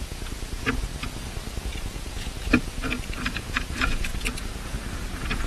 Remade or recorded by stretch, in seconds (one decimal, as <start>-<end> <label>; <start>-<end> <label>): 0.0-0.9 remade; 0.9-1.6 recorded; 1.6-2.8 remade; 2.8-3.3 recorded; 3.3-5.5 remade